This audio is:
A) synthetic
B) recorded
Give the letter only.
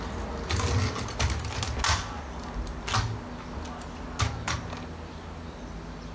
B